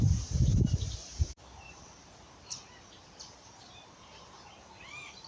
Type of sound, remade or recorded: remade